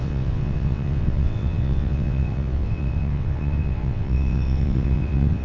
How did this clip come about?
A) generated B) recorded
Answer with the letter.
A